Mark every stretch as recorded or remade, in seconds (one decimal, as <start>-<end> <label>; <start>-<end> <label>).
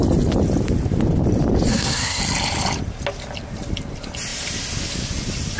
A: 0.0-1.7 recorded; 1.7-2.2 remade; 2.2-5.6 recorded